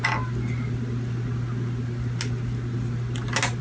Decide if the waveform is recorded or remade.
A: recorded